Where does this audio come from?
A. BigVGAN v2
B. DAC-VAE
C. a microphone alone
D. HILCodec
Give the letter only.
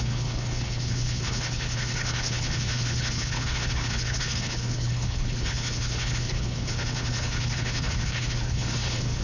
D